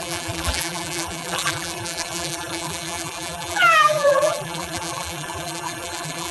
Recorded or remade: remade